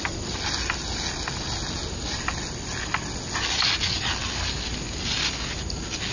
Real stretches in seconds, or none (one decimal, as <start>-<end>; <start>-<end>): 0.0-6.1